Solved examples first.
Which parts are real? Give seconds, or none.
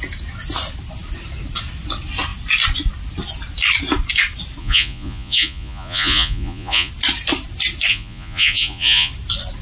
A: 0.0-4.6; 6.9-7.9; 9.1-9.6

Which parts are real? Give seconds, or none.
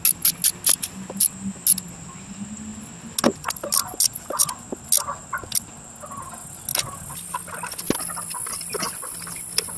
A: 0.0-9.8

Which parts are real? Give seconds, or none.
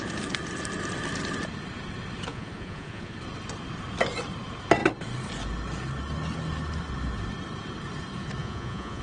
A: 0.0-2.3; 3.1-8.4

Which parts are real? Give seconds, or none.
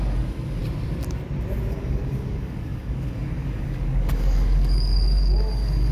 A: 0.6-1.7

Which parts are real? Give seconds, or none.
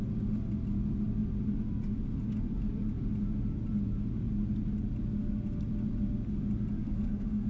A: 0.0-6.8